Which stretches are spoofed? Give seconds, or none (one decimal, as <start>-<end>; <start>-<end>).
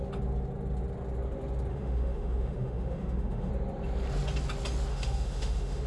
1.7-3.5; 4.9-5.9